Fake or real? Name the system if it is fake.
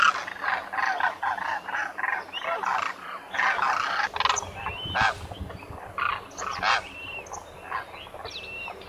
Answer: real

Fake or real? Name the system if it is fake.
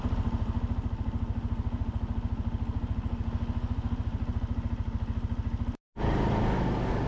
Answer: real